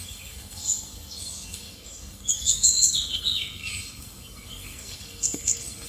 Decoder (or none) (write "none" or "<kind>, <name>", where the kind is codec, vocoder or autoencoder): codec, SNAC